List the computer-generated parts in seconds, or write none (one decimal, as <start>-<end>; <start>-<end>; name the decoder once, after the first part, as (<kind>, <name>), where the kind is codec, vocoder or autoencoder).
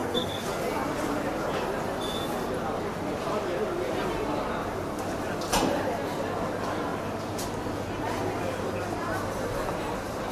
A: 0.0-0.5 (codec, SNAC)